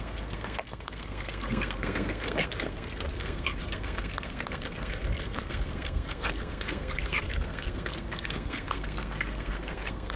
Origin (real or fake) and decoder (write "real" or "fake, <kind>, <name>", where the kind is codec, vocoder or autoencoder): fake, codec, SNAC